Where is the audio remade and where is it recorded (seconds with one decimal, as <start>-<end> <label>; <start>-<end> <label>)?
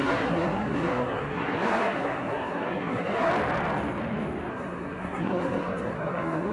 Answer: 0.0-3.3 remade; 3.3-4.5 recorded; 4.5-6.5 remade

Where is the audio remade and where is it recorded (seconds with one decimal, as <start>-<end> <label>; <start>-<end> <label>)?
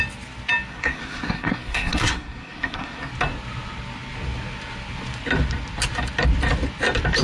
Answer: 0.0-0.7 recorded; 0.7-3.1 remade; 3.1-7.2 recorded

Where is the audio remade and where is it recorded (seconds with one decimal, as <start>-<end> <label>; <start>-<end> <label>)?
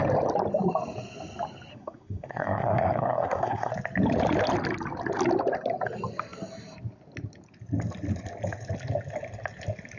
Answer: 0.0-1.7 recorded; 1.7-3.7 remade; 3.7-10.0 recorded